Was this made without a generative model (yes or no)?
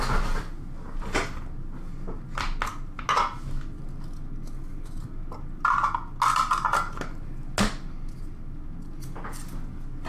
yes